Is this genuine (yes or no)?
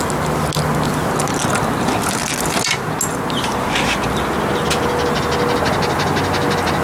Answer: yes